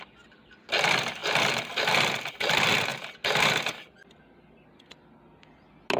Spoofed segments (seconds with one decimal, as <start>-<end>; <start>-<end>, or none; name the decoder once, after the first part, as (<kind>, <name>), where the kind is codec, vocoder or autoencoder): none